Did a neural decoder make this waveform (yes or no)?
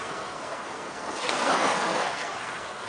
yes